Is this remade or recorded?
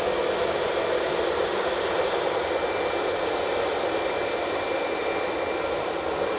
recorded